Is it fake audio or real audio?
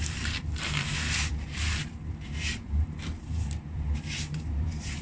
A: fake